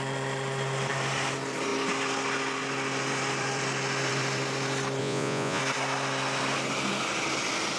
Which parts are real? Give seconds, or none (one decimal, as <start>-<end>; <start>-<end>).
0.0-5.0; 5.6-7.8